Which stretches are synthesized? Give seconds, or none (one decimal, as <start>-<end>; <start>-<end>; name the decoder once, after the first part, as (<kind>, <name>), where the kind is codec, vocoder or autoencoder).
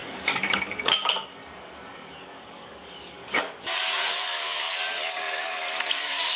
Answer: 0.0-1.4 (codec, DAC); 1.9-6.4